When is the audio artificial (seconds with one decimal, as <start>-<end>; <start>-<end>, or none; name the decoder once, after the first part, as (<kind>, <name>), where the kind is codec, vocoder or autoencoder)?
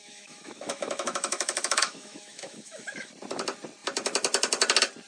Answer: 0.0-3.1 (autoencoder, DAC-VAE)